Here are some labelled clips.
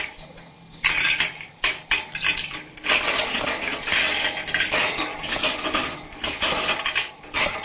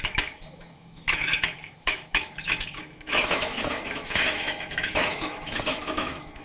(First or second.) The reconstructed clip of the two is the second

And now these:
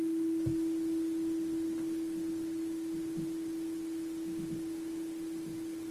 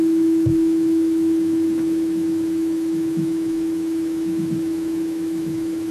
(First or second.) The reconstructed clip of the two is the second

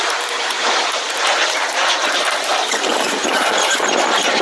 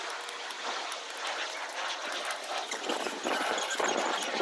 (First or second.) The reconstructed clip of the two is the first